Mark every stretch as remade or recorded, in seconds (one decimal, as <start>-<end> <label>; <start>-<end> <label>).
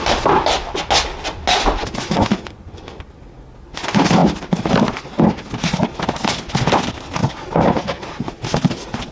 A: 0.0-1.8 recorded; 1.8-3.0 remade; 3.0-9.1 recorded